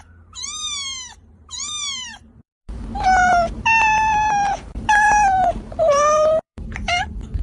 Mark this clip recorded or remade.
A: remade